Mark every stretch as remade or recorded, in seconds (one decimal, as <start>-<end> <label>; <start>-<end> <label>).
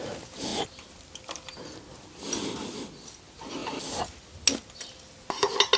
0.0-5.8 recorded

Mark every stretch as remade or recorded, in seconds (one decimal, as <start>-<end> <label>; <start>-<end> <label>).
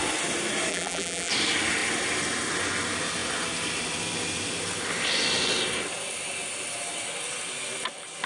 0.0-0.7 recorded; 0.7-1.3 remade; 1.3-8.3 recorded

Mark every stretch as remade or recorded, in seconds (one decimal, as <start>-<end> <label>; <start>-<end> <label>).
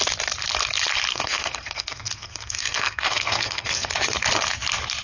0.0-1.1 recorded; 1.1-3.9 remade; 3.9-5.0 recorded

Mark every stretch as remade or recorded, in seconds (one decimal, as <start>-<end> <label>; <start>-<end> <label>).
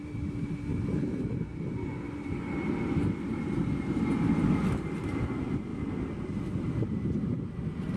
0.0-8.0 recorded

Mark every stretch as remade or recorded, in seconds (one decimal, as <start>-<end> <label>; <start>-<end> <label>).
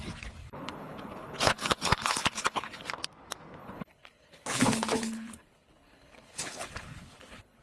0.0-0.4 recorded; 0.4-2.9 remade; 2.9-3.6 recorded; 3.6-7.6 remade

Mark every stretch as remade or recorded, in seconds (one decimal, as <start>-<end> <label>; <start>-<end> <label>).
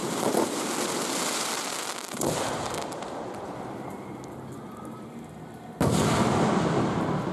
0.0-4.4 remade; 4.4-7.3 recorded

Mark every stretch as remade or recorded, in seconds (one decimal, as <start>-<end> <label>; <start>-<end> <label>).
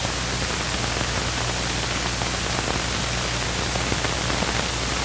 0.0-5.0 recorded